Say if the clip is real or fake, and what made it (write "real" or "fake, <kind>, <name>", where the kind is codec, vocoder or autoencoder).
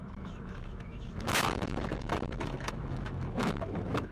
fake, autoencoder, DAC-VAE